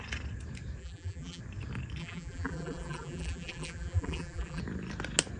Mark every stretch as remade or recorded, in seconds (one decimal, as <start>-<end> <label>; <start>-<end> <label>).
0.0-0.8 recorded; 0.8-1.4 remade; 1.4-2.0 recorded; 2.0-4.6 remade; 4.6-5.4 recorded